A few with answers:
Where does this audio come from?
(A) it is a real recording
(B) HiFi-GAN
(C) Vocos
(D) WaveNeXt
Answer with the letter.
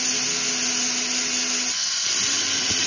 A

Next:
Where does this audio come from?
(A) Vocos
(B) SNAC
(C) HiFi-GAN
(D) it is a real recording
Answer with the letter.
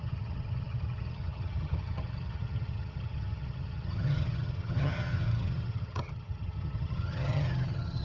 C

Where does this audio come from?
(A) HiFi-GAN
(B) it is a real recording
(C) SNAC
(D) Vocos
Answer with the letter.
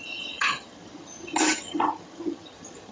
A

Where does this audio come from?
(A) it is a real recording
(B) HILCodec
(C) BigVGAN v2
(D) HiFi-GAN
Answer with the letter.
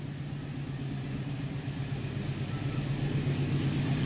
A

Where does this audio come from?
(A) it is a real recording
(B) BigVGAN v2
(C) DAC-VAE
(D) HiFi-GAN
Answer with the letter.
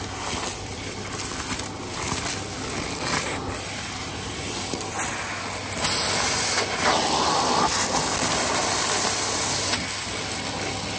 A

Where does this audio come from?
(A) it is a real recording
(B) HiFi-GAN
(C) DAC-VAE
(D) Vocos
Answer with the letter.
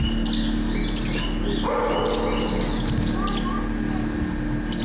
A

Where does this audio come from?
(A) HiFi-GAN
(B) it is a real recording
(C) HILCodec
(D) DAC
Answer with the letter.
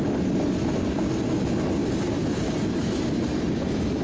B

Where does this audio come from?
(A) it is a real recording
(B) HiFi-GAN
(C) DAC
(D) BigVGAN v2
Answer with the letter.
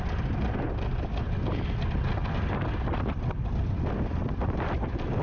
A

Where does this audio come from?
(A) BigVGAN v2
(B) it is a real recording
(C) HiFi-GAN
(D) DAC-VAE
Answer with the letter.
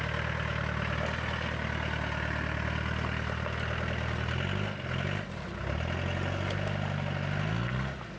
B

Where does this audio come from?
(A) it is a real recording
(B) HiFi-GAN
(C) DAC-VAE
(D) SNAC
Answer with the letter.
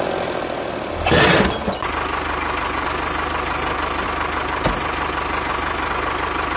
A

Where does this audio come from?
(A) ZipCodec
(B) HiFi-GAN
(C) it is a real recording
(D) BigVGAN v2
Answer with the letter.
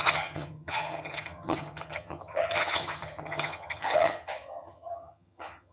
B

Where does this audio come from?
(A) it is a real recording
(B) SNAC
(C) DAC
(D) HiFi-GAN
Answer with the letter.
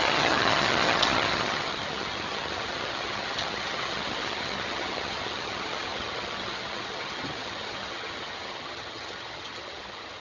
D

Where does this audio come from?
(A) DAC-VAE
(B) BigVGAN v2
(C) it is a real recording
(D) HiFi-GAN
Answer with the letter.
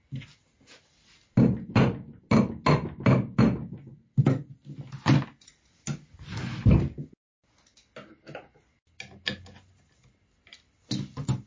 C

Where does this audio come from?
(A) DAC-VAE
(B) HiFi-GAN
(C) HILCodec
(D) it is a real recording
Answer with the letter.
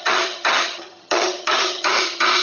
B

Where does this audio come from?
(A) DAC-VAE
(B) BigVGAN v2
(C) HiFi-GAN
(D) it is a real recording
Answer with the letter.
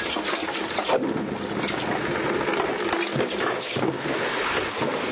D